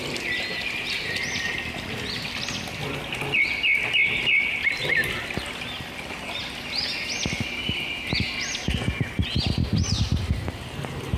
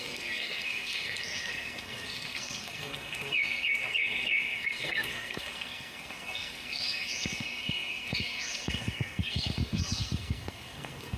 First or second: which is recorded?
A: first